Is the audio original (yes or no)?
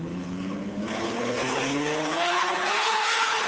no